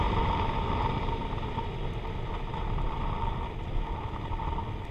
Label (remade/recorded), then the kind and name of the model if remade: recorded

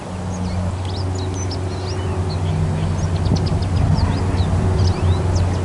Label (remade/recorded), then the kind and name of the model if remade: recorded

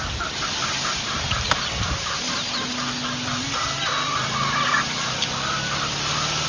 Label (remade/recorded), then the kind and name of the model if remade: recorded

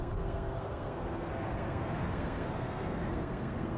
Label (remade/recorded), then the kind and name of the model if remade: remade, codec, SNAC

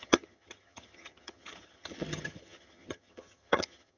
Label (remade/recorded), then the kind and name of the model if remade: remade, vocoder, HiFi-GAN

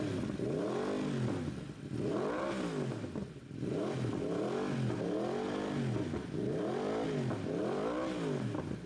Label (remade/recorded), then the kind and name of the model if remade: recorded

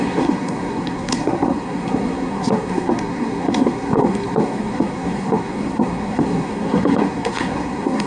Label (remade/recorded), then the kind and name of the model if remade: remade, codec, SNAC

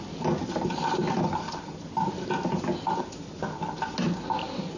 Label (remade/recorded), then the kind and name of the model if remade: recorded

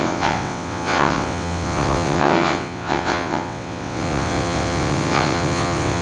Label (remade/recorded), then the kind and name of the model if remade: remade, vocoder, WaveNeXt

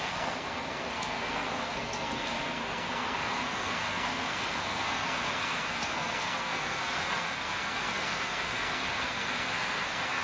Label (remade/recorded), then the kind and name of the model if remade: remade, codec, SNAC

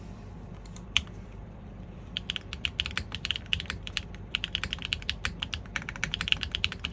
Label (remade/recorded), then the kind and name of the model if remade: remade, vocoder, BigVGAN v2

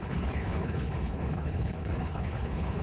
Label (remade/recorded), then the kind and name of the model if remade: remade, codec, HILCodec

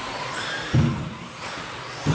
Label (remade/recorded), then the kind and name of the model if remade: remade, vocoder, BigVGAN v2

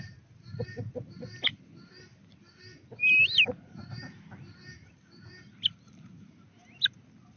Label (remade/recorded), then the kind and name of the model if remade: recorded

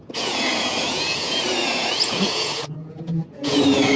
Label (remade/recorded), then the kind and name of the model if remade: remade, vocoder, Vocos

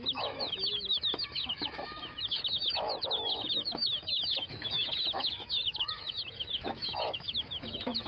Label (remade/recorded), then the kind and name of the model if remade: remade, autoencoder, DAC-VAE